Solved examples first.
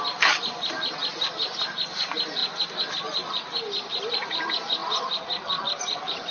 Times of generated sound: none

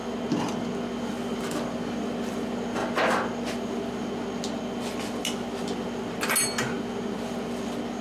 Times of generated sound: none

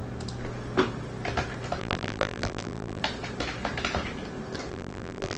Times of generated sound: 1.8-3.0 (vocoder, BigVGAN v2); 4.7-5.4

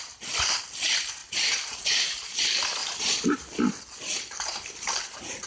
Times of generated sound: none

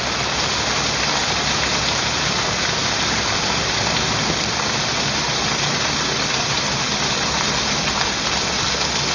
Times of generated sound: 2.8-7.4 (vocoder, BigVGAN v2)

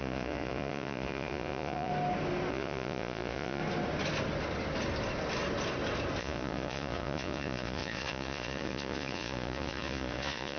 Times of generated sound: 0.0-1.9 (vocoder, Vocos); 2.5-3.6; 6.2-10.6

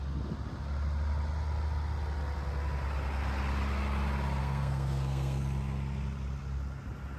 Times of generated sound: 4.4-5.4 (codec, SNAC)